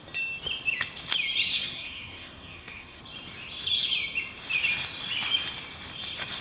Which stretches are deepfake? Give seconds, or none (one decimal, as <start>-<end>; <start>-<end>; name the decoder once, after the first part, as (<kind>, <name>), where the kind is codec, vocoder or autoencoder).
1.5-3.0 (codec, SNAC)